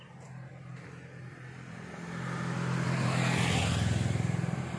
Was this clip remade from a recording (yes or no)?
no